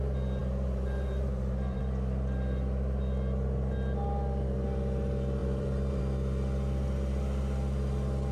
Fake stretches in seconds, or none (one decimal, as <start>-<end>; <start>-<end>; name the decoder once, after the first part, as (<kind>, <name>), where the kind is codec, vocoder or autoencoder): 0.4-1.8 (vocoder, BigVGAN v2); 5.4-6.0